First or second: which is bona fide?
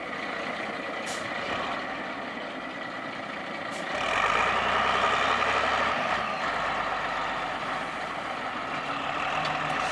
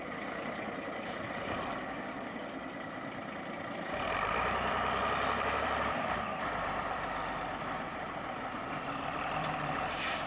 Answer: first